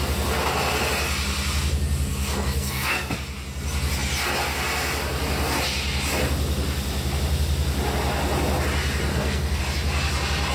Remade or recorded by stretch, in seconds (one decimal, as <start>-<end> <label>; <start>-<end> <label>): 0.0-2.1 recorded; 2.1-3.1 remade; 3.1-9.1 recorded; 9.1-9.6 remade; 9.6-10.5 recorded